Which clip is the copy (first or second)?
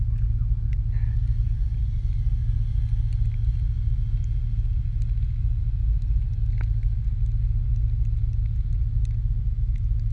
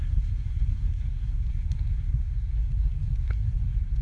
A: second